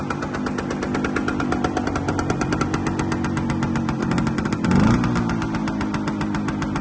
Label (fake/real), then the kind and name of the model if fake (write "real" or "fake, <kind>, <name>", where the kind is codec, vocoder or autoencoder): real